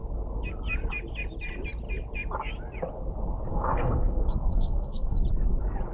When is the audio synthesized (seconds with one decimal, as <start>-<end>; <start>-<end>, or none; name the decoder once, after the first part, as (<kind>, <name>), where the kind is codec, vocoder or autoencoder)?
3.5-5.2 (codec, SNAC)